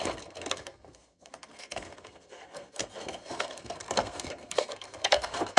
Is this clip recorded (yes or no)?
no